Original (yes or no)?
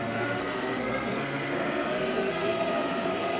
no